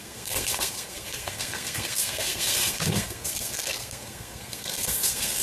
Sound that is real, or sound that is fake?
fake